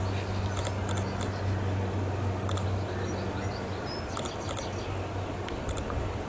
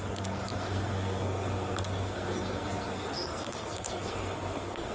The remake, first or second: second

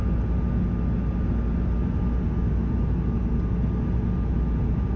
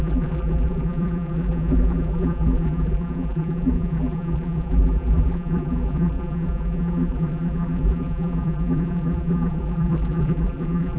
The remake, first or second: second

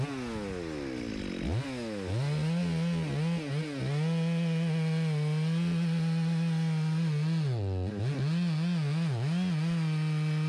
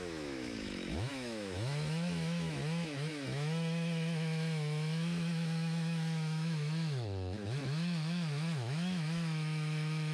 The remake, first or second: second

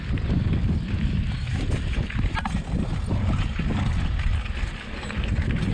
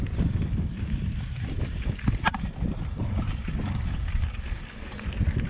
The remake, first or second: second